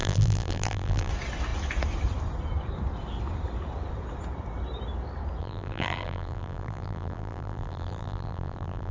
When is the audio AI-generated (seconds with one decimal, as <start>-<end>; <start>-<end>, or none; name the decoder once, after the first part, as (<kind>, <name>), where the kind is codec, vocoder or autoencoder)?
0.0-1.1 (vocoder, BigVGAN v2); 5.4-8.9